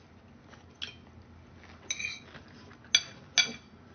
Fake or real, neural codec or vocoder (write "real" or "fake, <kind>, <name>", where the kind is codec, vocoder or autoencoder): real